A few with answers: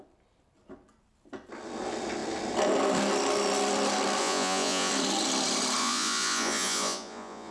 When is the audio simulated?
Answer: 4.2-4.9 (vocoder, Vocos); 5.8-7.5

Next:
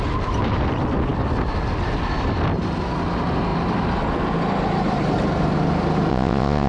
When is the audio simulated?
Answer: 6.1-6.7 (vocoder, Vocos)

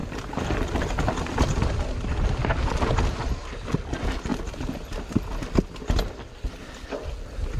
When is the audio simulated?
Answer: none

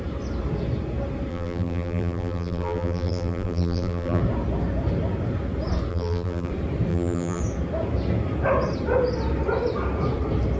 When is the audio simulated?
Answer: 1.3-4.2 (vocoder, BigVGAN v2); 5.9-6.5; 6.9-7.4